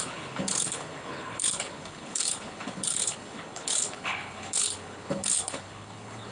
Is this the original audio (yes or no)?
no